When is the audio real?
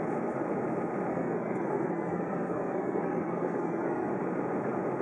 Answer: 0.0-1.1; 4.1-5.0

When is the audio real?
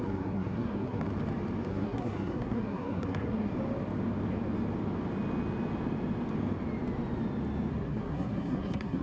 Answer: 1.1-1.7; 3.5-7.7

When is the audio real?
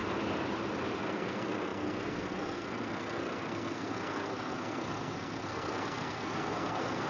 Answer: 0.0-1.0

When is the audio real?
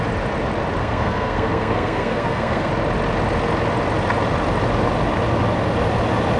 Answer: 0.0-0.8; 2.7-6.4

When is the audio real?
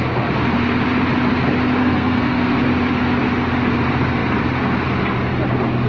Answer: 0.0-1.8; 2.6-5.9